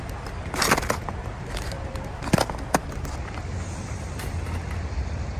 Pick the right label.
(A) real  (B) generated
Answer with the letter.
A